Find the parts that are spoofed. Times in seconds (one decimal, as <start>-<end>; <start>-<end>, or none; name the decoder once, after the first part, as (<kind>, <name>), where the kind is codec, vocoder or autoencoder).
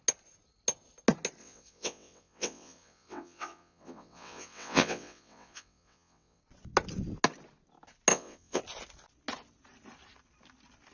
1.4-6.4 (vocoder, WaveNeXt); 8.1-8.6